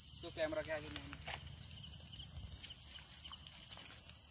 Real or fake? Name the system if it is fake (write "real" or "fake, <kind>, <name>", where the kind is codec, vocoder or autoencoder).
real